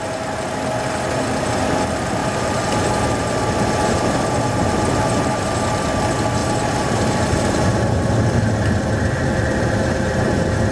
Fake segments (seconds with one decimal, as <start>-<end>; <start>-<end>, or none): 2.2-5.5; 6.4-8.5